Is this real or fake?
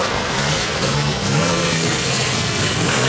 fake